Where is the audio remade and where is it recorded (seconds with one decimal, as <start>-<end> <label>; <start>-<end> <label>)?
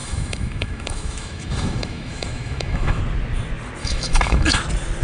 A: 0.0-3.0 remade; 3.0-3.8 recorded; 3.8-4.6 remade; 4.6-5.0 recorded